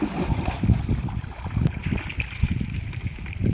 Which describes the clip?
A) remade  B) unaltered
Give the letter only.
A